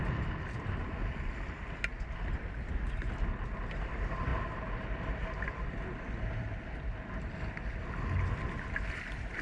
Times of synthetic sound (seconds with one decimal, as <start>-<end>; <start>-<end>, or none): none